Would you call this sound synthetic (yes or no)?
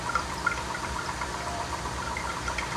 yes